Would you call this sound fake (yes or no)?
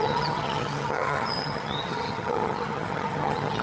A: yes